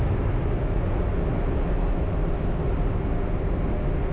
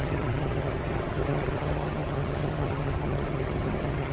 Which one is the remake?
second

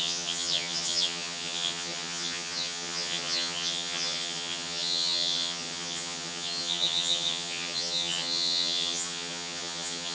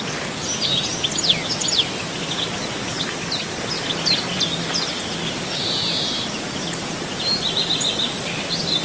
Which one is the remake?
first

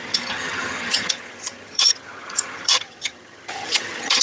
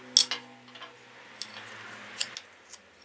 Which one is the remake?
first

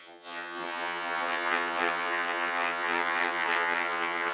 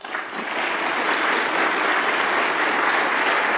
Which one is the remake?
first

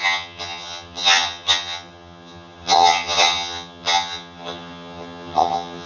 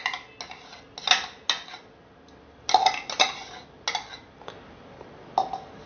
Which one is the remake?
first